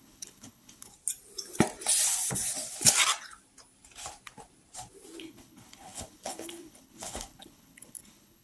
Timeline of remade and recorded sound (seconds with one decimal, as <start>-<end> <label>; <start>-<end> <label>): 0.0-0.9 remade; 0.9-5.2 recorded; 5.2-8.4 remade